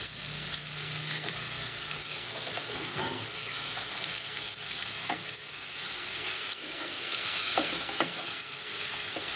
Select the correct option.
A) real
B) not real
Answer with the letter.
B